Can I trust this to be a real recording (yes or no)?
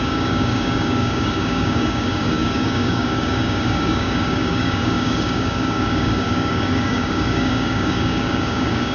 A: no